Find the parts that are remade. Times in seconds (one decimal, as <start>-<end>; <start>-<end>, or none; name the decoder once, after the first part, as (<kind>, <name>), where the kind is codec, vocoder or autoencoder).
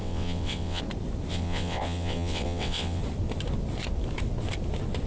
0.0-0.8 (vocoder, WaveNeXt); 1.3-3.0